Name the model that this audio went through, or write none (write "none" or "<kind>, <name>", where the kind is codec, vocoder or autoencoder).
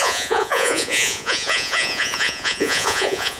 vocoder, Vocos